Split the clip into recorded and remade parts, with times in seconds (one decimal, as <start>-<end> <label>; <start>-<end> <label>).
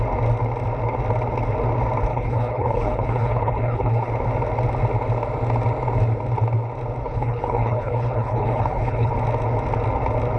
0.0-2.1 recorded; 2.1-4.1 remade; 4.1-7.0 recorded; 7.0-9.1 remade; 9.1-10.4 recorded